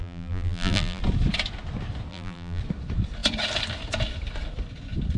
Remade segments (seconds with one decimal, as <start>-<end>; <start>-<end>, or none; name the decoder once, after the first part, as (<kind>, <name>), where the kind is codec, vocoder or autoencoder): 0.0-1.0 (vocoder, BigVGAN v2); 2.1-2.6